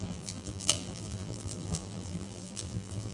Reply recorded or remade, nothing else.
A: remade